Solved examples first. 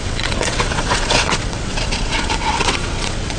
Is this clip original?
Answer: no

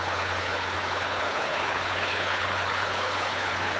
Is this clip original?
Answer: no